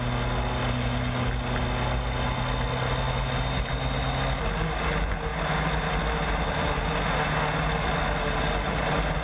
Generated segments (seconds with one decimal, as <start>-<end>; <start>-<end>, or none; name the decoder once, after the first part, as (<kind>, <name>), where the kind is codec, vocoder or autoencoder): none